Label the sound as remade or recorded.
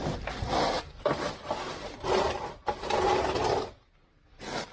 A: recorded